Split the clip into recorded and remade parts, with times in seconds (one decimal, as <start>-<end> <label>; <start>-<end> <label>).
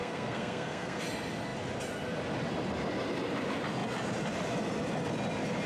0.0-1.0 remade; 1.0-5.7 recorded